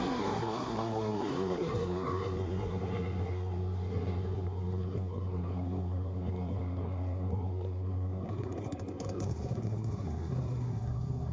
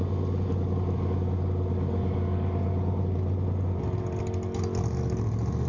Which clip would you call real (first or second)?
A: second